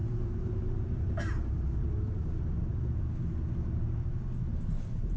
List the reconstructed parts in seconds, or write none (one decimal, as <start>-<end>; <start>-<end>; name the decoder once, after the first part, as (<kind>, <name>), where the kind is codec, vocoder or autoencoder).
0.0-3.1 (vocoder, BigVGAN v2)